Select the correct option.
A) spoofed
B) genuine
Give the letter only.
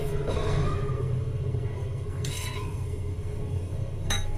A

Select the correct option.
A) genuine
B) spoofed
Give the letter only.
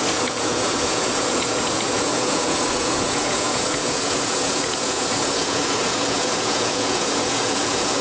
B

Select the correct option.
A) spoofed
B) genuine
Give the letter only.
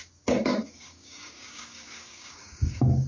A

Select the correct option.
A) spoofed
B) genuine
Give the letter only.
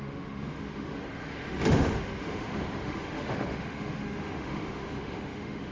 A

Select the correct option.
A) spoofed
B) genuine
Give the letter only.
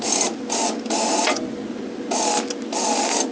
B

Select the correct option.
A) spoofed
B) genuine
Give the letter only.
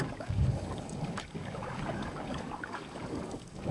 A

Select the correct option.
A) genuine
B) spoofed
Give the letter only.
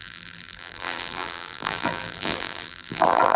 B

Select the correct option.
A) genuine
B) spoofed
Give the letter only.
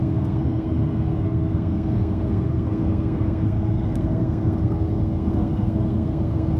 B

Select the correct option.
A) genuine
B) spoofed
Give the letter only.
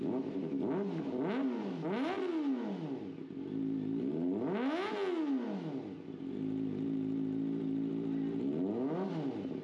A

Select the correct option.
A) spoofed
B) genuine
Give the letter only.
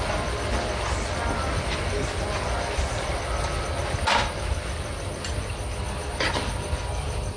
B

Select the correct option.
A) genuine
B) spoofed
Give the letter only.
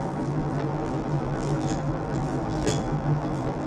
B